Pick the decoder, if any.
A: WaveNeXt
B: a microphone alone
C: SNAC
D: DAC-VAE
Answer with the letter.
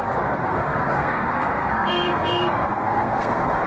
C